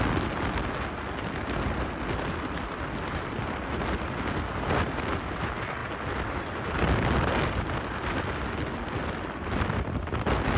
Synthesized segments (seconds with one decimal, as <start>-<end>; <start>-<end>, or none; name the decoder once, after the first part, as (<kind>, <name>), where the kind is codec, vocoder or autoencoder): none

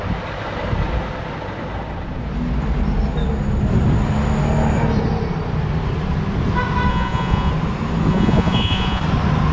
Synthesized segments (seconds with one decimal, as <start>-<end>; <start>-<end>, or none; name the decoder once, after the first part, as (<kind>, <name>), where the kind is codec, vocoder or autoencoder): 6.9-7.5 (vocoder, Vocos); 8.1-9.0

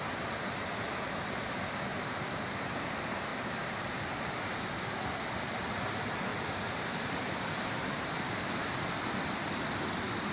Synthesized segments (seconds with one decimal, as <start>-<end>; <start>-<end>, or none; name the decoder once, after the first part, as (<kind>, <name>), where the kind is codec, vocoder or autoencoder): 1.9-2.8 (vocoder, BigVGAN v2); 6.3-8.6

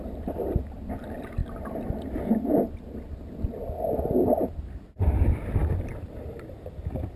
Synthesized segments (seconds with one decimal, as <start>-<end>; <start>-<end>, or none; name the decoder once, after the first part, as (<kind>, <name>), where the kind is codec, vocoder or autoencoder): 0.0-1.4 (vocoder, BigVGAN v2); 5.0-7.2